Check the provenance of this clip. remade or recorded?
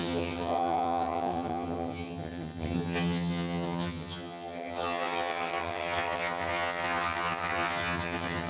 remade